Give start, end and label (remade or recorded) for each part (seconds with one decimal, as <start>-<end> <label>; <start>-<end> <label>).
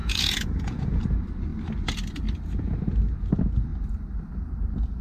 0.0-1.0 remade; 1.0-5.0 recorded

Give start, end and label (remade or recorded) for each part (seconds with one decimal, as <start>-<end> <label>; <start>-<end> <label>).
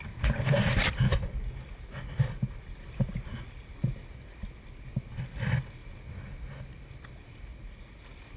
0.0-7.5 recorded; 7.5-8.0 remade; 8.0-8.4 recorded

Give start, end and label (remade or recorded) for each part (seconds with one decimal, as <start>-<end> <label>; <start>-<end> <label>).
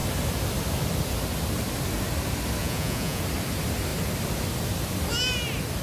0.0-2.6 recorded; 2.6-3.2 remade; 3.2-5.8 recorded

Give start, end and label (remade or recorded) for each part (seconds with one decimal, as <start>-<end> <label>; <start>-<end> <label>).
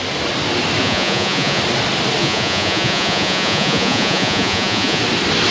0.0-0.8 recorded; 0.8-1.6 remade; 1.6-2.2 recorded; 2.2-5.0 remade; 5.0-5.5 recorded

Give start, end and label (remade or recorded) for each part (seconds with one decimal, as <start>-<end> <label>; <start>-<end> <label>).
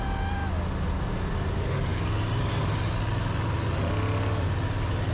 0.0-5.1 recorded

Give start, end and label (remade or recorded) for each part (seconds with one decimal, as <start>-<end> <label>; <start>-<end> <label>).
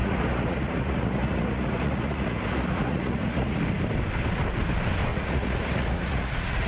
0.0-3.6 remade; 3.6-5.1 recorded; 5.1-6.7 remade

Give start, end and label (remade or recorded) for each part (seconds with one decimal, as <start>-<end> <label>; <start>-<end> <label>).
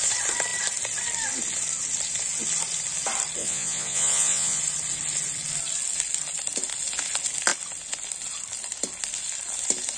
0.0-3.4 recorded; 3.4-4.6 remade; 4.6-10.0 recorded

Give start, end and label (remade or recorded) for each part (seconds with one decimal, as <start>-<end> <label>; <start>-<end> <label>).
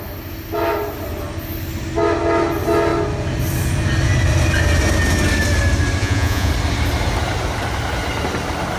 0.0-6.0 recorded; 6.0-6.5 remade; 6.5-8.8 recorded